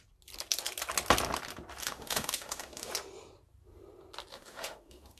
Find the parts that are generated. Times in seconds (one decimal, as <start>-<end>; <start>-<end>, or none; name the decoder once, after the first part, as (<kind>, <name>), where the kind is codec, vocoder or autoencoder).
1.8-2.9 (autoencoder, DAC-VAE); 4.3-5.2